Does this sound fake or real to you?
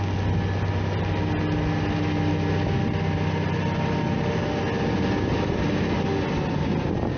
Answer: real